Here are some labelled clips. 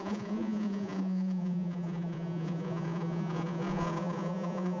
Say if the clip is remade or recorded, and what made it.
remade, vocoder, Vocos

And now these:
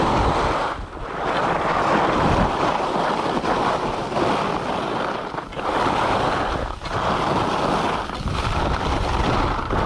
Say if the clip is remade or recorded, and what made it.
recorded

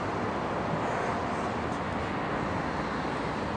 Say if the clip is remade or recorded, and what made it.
recorded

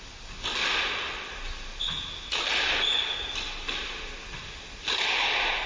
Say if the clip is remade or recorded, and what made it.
recorded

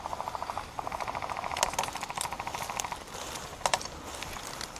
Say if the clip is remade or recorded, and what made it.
recorded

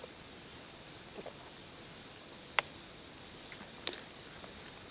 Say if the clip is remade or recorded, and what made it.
recorded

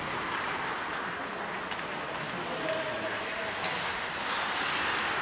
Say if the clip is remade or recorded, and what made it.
recorded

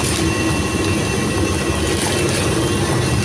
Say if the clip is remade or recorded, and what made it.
recorded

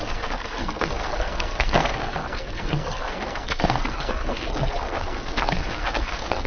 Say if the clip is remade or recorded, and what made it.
remade, codec, SNAC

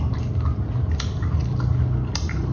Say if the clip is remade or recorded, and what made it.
recorded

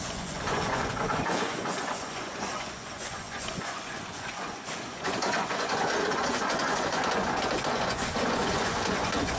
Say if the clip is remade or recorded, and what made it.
remade, vocoder, Vocos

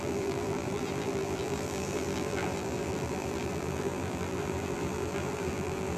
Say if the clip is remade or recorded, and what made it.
remade, vocoder, BigVGAN v2